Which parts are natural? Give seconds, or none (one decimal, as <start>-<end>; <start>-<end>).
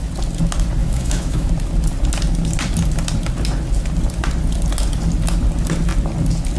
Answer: 0.0-0.8; 1.5-6.6